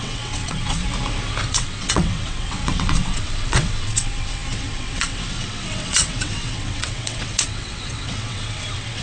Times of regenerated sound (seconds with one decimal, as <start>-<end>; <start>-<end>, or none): 0.0-0.8; 1.5-9.0